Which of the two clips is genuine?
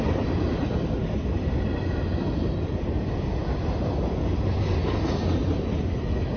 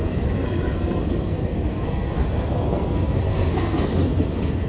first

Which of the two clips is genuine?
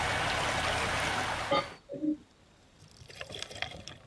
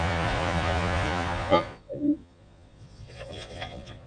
first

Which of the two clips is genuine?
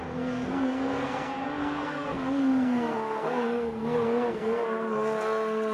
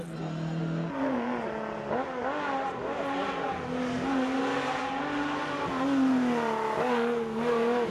second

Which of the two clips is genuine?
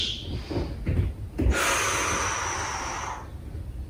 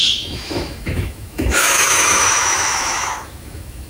first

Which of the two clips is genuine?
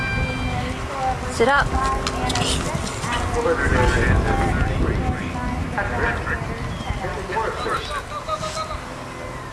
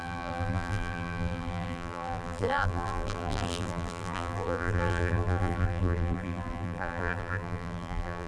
first